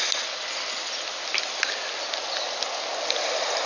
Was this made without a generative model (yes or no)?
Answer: yes